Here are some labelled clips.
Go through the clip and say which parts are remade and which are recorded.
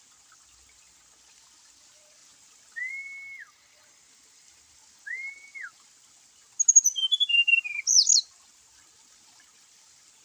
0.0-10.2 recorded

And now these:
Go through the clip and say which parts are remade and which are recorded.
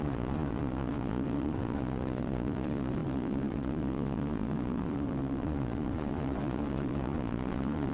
0.0-7.9 remade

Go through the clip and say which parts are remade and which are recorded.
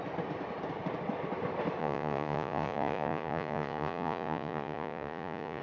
0.0-1.8 recorded; 1.8-5.6 remade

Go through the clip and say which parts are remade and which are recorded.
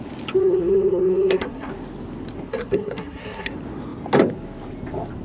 0.0-0.4 recorded; 0.4-1.7 remade; 1.7-2.5 recorded; 2.5-3.5 remade; 3.5-5.2 recorded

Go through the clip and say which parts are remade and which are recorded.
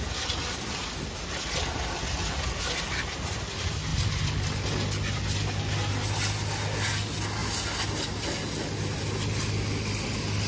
0.0-10.5 recorded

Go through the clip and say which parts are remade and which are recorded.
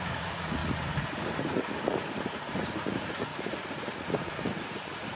0.0-5.2 remade